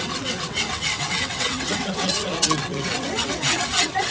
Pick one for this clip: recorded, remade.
remade